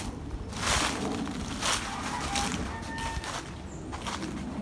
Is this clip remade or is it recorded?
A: recorded